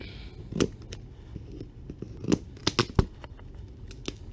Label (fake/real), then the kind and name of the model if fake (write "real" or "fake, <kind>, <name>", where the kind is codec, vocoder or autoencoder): real